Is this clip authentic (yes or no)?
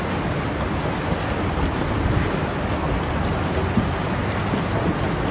yes